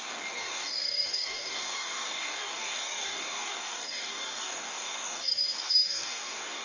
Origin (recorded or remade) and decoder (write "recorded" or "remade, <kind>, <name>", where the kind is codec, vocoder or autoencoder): remade, codec, DAC